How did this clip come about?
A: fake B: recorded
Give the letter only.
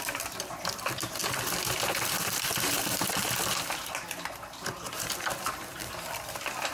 B